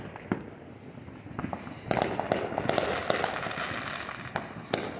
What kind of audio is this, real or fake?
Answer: real